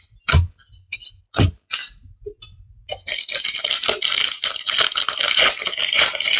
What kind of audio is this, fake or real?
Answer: real